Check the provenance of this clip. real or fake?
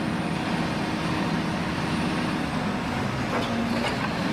real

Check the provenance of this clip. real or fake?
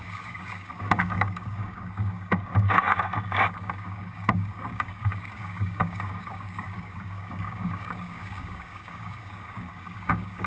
fake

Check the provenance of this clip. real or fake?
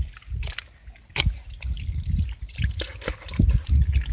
real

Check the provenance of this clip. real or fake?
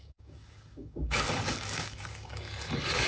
fake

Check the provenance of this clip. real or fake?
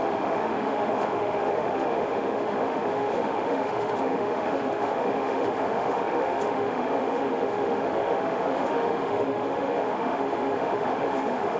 fake